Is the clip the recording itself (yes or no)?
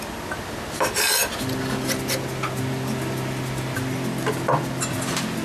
yes